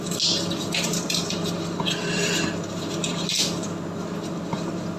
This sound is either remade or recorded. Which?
recorded